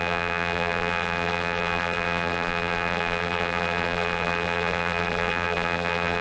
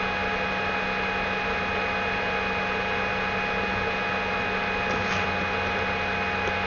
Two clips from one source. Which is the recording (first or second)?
second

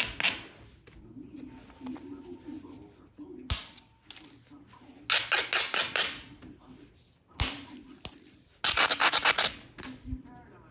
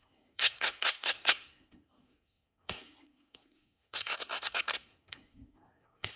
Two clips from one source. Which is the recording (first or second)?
first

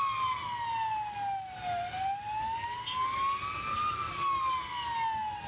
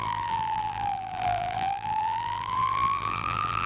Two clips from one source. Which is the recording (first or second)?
first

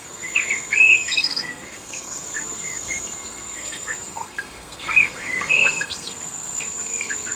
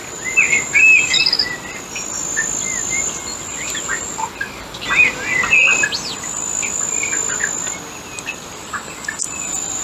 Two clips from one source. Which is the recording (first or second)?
second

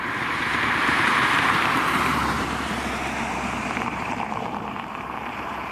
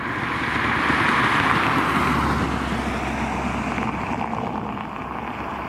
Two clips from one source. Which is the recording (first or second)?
second